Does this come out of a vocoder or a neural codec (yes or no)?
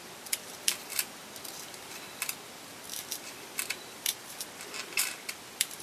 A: yes